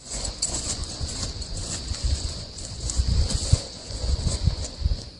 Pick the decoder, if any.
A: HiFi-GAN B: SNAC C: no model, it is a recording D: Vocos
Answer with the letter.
D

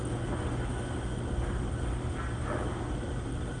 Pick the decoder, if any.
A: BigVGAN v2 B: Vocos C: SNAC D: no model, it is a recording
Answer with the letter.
D